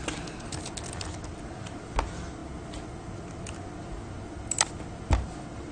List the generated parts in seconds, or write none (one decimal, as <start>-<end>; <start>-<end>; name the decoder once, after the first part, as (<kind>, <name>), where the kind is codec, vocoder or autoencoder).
none